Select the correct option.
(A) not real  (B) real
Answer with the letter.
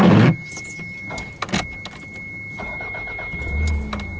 B